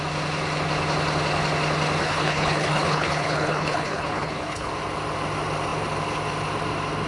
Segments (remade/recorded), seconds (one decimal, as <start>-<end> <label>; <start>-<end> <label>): 0.0-2.0 recorded; 2.0-4.7 remade; 4.7-7.1 recorded